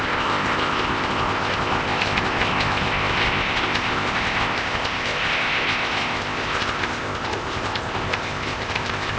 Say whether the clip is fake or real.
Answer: fake